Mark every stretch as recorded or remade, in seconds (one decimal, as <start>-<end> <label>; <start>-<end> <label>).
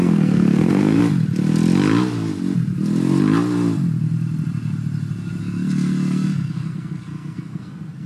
0.0-1.0 remade; 1.0-5.4 recorded; 5.4-8.1 remade